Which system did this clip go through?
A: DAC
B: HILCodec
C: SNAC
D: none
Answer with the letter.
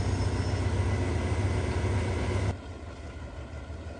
D